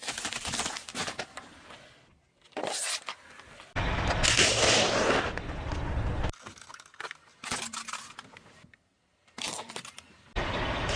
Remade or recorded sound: recorded